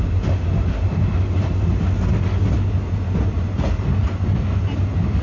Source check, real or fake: real